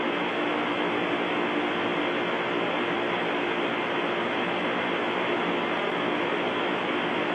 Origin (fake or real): real